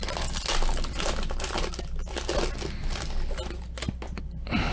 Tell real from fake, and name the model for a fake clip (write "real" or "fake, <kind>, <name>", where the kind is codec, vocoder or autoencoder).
real